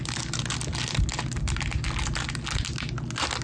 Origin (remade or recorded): recorded